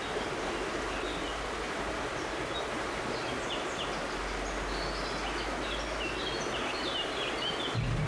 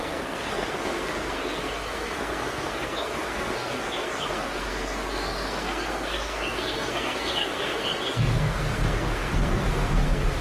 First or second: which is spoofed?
second